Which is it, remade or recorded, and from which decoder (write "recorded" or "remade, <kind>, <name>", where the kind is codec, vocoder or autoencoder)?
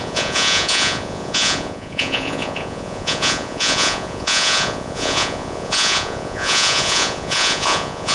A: remade, vocoder, Vocos